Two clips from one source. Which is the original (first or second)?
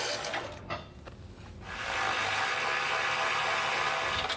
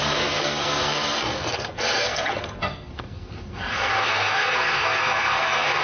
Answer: first